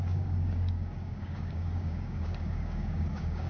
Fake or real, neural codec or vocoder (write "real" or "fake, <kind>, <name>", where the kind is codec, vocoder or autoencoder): fake, codec, DAC